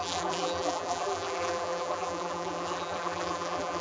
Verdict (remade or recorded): remade